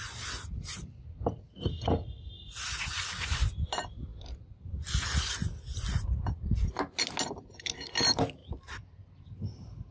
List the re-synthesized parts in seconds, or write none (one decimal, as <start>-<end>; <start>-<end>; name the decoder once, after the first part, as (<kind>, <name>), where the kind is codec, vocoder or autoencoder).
none